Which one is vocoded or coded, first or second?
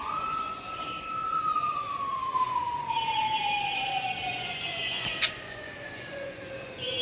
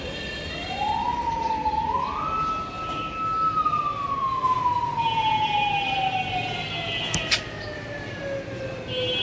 first